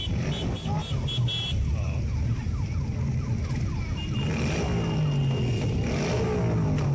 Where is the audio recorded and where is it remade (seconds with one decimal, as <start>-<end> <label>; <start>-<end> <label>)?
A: 0.0-0.8 recorded; 0.8-2.6 remade; 2.6-6.9 recorded